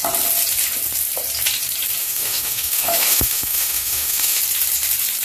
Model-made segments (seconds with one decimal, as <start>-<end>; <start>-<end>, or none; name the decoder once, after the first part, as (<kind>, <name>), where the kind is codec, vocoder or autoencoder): 2.0-4.4 (autoencoder, DAC-VAE)